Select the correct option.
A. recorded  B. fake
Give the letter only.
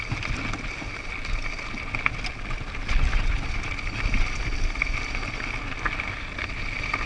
A